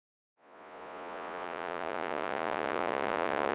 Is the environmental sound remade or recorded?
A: remade